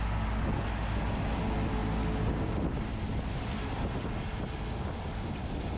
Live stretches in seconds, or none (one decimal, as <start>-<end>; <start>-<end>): 0.0-5.8